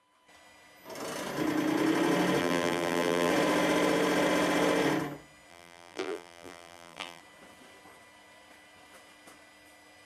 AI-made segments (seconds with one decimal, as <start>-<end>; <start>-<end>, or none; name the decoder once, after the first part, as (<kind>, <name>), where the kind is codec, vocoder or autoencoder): 2.4-3.3 (vocoder, BigVGAN v2); 5.5-7.2